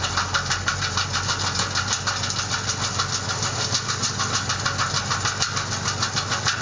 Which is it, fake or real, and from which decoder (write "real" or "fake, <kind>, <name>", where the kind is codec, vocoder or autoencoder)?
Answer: real